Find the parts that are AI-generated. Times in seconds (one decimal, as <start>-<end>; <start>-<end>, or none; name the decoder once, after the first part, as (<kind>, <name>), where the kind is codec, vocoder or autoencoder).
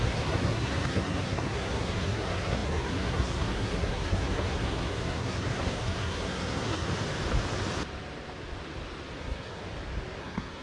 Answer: 0.0-6.9 (codec, SNAC); 9.2-9.6; 10.2-10.6